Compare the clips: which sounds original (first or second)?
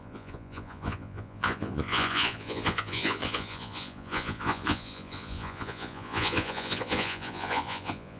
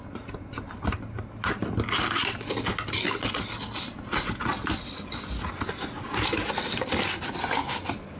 second